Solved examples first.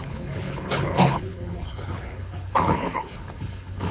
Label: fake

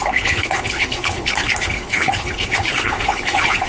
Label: fake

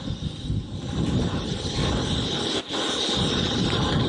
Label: real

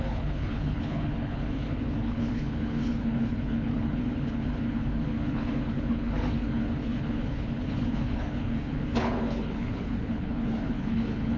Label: fake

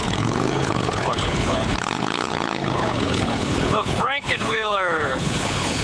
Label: fake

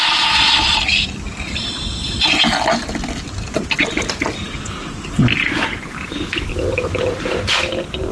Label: real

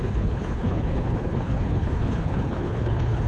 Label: fake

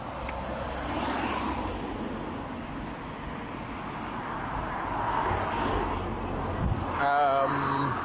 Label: real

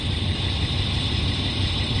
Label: real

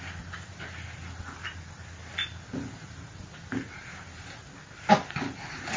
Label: real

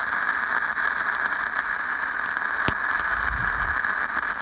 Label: real